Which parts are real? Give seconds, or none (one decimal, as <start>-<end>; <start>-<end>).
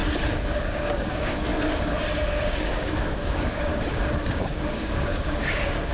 0.0-0.6; 1.5-2.3; 3.7-4.3